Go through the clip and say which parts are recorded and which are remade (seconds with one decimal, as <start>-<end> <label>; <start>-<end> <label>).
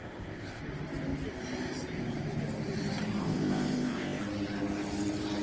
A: 0.0-0.6 remade; 0.6-3.2 recorded; 3.2-4.2 remade; 4.2-5.4 recorded